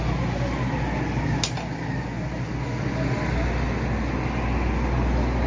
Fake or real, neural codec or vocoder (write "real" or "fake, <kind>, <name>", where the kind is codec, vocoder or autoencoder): real